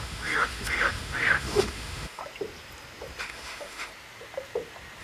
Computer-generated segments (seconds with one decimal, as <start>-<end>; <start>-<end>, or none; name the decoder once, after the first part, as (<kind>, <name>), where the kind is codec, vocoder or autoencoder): 0.0-2.2 (autoencoder, DAC-VAE); 3.2-3.9